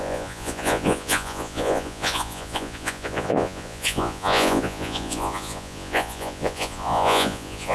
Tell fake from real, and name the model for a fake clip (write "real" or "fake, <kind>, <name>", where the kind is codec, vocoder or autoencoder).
fake, vocoder, Vocos